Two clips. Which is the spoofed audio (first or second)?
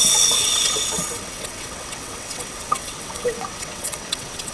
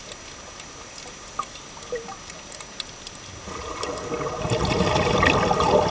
first